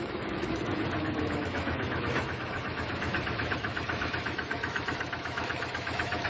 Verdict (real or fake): fake